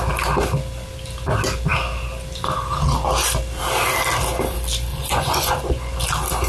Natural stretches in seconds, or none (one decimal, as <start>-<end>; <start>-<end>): 0.0-4.9; 6.0-6.5